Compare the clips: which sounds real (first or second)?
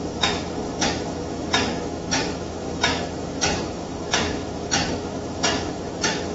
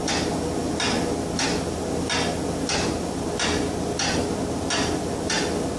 second